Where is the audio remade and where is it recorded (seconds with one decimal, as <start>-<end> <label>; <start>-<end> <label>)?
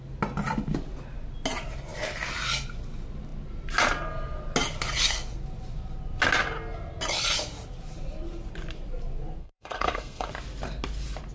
0.0-9.4 recorded; 9.4-10.3 remade; 10.3-11.3 recorded